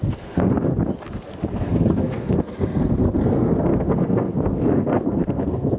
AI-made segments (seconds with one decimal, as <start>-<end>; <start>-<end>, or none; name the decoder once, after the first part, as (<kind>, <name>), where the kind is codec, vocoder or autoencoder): 0.0-0.7 (codec, SNAC); 1.5-5.8